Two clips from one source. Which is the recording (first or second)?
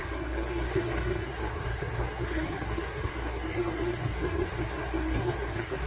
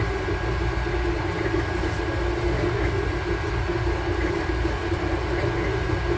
second